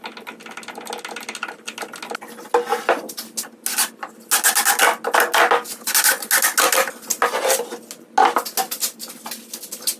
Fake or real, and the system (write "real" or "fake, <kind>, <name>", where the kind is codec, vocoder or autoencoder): real